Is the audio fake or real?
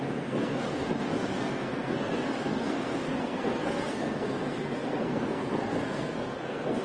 fake